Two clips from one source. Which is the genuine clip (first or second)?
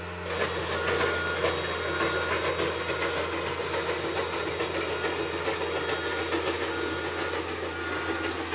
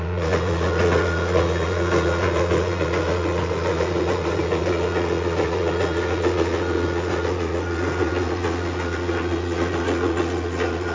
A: first